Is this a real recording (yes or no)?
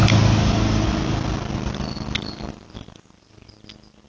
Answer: yes